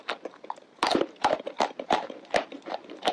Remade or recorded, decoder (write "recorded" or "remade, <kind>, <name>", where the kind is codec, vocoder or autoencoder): remade, vocoder, BigVGAN v2